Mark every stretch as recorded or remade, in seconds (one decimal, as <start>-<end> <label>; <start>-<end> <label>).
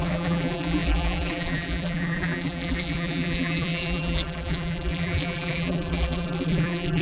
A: 0.0-7.0 remade